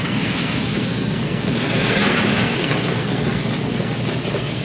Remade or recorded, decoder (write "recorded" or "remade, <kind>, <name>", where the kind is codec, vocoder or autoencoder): remade, codec, SNAC